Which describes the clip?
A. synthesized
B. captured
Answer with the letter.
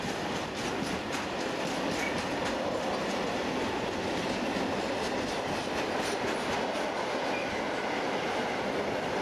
B